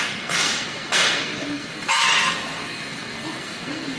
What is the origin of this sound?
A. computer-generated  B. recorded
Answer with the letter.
A